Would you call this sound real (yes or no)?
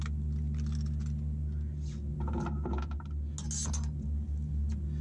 yes